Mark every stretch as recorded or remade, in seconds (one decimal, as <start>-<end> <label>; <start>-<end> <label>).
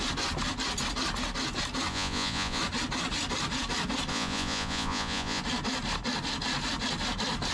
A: 0.0-1.9 recorded; 1.9-2.6 remade; 2.6-4.1 recorded; 4.1-5.4 remade; 5.4-7.5 recorded